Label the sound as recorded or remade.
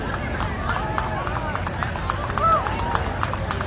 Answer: recorded